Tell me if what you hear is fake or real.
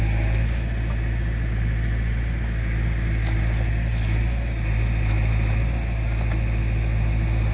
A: real